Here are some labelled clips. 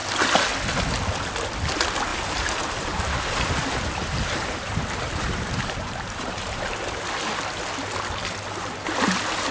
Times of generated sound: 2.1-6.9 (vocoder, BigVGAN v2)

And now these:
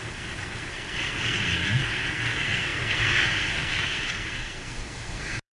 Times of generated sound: 0.0-5.6 (codec, SNAC)